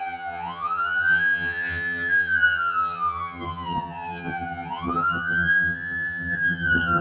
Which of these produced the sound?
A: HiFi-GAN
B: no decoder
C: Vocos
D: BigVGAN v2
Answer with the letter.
A